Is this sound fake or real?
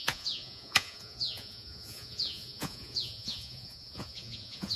fake